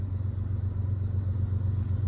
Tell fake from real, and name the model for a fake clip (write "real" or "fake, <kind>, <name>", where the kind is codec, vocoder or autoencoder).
real